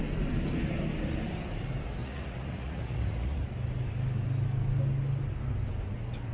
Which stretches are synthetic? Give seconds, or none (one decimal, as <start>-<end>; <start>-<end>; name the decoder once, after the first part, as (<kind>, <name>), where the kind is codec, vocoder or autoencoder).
2.0-3.4 (vocoder, Vocos)

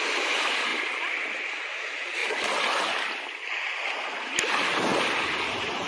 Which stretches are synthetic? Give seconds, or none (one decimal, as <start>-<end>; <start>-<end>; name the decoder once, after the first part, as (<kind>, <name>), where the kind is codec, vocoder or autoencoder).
0.0-0.7 (vocoder, BigVGAN v2); 1.6-2.2; 5.2-5.9

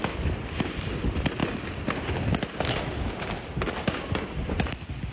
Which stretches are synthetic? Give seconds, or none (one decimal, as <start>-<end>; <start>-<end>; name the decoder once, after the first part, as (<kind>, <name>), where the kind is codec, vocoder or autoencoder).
none